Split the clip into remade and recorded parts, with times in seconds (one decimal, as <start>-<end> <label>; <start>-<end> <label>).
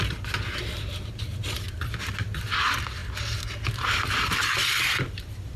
0.0-5.6 recorded